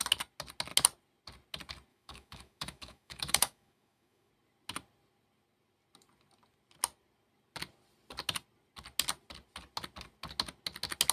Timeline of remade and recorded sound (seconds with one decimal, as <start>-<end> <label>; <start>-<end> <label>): 0.0-1.9 recorded; 1.9-4.3 remade; 4.3-11.1 recorded

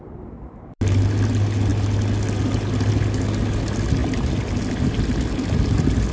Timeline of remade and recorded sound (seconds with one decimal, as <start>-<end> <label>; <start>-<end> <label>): 0.0-6.1 recorded

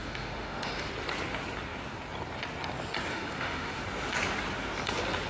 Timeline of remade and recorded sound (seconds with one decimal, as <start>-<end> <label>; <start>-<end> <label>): 0.0-0.9 remade; 0.9-3.1 recorded; 3.1-3.8 remade; 3.8-5.3 recorded

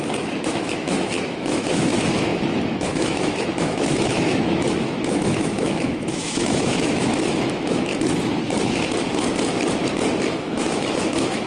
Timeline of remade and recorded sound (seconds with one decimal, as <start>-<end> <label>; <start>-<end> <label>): 0.0-7.9 remade; 7.9-10.3 recorded; 10.3-11.5 remade

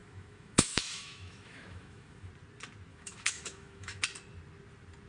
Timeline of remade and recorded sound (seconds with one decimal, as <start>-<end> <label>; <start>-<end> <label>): 0.0-2.3 remade; 2.3-2.9 recorded; 2.9-4.0 remade; 4.0-5.1 recorded

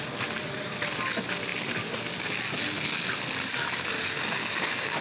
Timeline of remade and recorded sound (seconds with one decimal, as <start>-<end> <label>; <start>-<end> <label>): 0.0-5.0 recorded

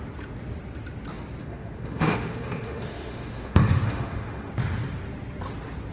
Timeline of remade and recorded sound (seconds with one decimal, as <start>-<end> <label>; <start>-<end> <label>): 0.0-1.4 recorded; 1.4-4.5 remade; 4.5-5.9 recorded

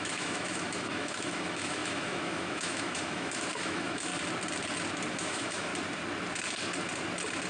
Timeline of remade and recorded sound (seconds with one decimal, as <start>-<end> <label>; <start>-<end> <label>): 0.0-4.1 remade; 4.1-5.1 recorded; 5.1-5.7 remade; 5.7-7.5 recorded